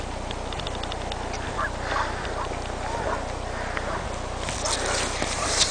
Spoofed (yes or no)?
no